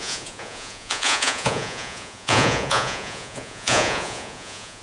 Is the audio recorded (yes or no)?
no